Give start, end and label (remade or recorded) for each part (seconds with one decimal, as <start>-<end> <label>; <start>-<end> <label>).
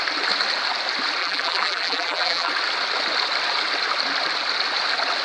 0.0-1.2 recorded; 1.2-2.5 remade; 2.5-5.2 recorded